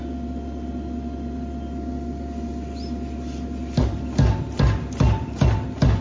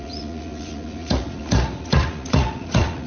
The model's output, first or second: second